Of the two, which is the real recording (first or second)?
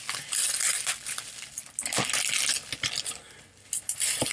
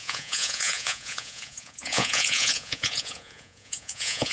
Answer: first